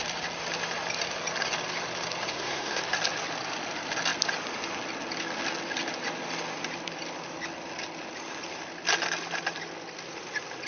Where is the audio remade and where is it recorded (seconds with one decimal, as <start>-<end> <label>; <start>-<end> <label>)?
0.0-2.3 recorded; 2.3-2.8 remade; 2.8-10.7 recorded